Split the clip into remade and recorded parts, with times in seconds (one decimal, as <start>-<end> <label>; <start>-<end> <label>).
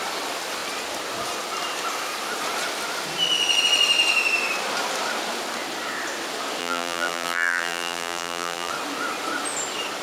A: 0.0-6.6 recorded; 6.6-8.7 remade; 8.7-10.0 recorded